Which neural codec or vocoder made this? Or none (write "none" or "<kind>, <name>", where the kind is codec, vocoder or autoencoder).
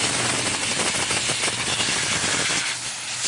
none